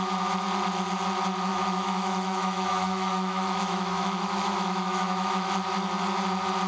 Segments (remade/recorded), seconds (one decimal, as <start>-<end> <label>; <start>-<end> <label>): 0.0-1.5 recorded; 1.5-5.5 remade; 5.5-6.7 recorded